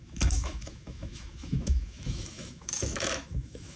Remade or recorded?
remade